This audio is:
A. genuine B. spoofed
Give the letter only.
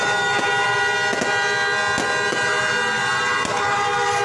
A